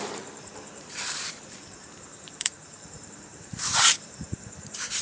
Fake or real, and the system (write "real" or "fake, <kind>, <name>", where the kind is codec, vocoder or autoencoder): fake, vocoder, BigVGAN v2